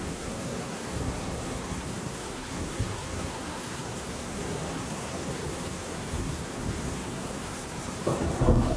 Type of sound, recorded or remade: remade